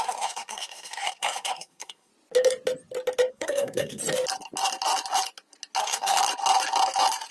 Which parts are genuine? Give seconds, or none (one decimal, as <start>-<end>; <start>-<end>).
2.1-3.3; 4.0-5.8; 6.2-7.3